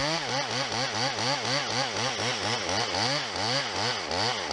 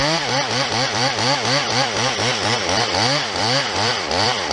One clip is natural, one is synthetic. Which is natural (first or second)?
first